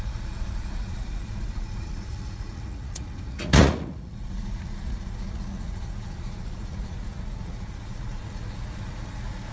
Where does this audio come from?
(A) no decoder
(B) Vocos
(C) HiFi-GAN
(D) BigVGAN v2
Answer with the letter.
B